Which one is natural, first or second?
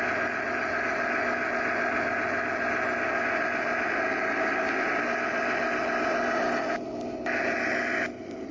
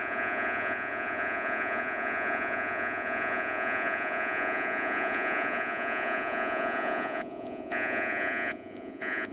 first